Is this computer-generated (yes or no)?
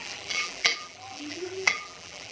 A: yes